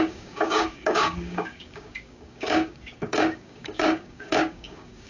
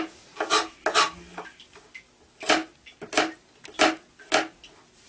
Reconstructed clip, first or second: first